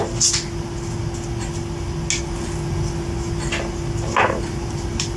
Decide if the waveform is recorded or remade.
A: recorded